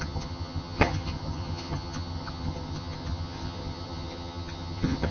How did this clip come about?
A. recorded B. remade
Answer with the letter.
B